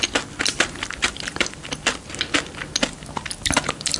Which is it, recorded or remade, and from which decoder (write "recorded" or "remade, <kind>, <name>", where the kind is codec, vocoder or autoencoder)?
recorded